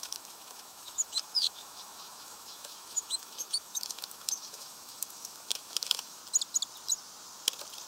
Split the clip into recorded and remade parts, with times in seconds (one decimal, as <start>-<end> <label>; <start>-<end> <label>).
0.0-6.2 remade; 6.2-7.9 recorded